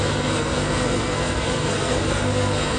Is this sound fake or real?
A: fake